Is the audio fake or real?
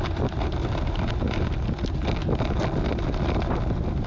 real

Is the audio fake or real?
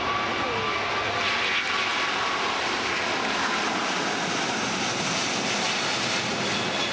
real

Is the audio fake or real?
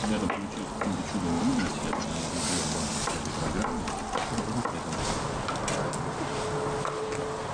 real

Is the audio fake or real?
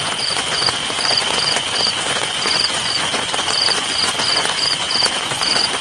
fake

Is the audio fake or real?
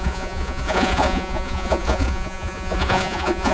fake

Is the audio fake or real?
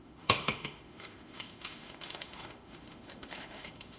fake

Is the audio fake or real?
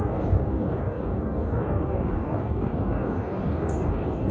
fake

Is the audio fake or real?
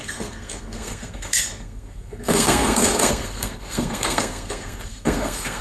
fake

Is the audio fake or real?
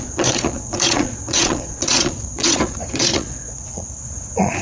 fake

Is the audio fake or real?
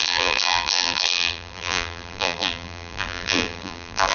fake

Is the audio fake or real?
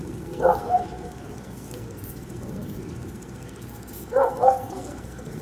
fake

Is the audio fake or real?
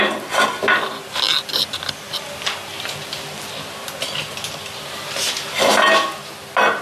real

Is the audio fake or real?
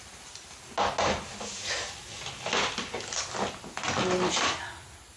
real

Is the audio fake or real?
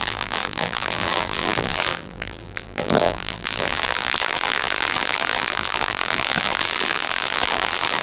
fake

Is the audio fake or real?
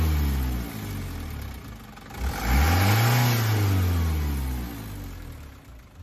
real